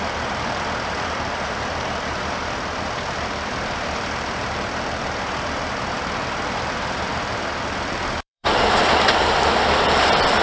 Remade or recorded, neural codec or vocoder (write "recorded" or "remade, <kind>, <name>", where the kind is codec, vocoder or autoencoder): remade, vocoder, BigVGAN v2